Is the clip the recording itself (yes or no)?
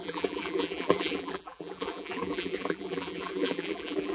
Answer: no